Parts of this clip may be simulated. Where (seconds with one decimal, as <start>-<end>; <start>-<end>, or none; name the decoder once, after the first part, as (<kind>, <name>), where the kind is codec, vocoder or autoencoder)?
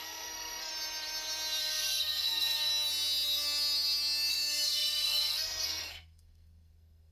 0.0-0.7 (codec, SNAC); 1.6-2.7; 4.3-7.1